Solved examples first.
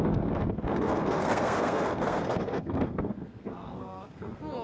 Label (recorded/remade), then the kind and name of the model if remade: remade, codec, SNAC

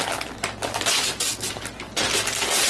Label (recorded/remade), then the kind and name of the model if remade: recorded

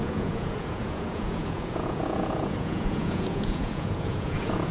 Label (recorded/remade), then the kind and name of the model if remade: remade, vocoder, Vocos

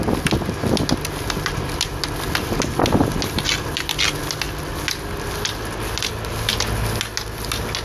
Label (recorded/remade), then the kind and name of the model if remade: recorded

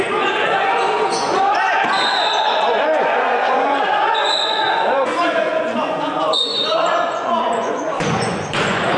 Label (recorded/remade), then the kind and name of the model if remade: remade, vocoder, Vocos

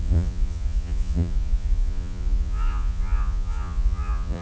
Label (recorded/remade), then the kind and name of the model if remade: remade, vocoder, Vocos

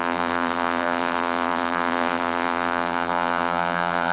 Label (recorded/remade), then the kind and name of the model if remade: remade, vocoder, BigVGAN v2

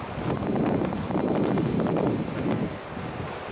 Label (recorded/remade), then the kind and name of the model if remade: recorded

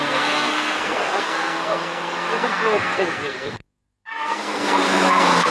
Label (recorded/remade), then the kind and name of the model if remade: remade, codec, SNAC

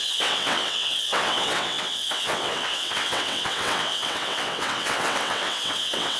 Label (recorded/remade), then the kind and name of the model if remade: remade, vocoder, WaveNeXt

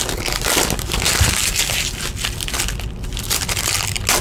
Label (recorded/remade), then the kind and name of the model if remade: recorded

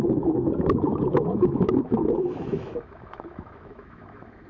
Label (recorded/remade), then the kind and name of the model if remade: remade, autoencoder, DAC-VAE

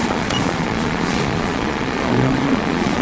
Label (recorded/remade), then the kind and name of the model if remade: remade, vocoder, Vocos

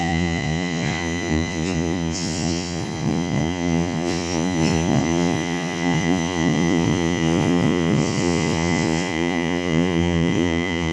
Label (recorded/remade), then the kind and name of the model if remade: remade, vocoder, Vocos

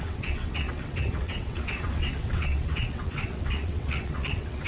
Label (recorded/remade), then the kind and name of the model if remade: remade, vocoder, WaveNeXt